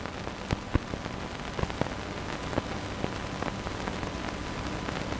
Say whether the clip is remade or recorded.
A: recorded